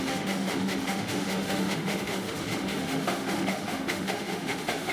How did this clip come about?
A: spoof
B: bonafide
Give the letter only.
A